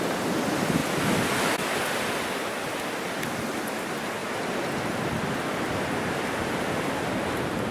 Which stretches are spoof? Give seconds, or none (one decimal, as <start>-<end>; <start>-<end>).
none